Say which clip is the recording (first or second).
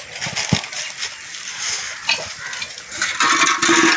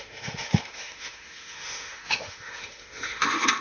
first